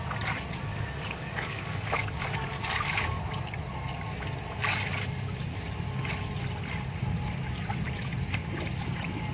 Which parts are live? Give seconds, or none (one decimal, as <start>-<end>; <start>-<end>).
0.0-0.7; 3.2-9.3